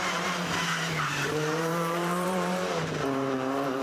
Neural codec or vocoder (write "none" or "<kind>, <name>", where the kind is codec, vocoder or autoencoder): vocoder, BigVGAN v2